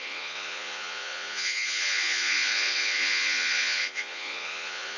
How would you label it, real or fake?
fake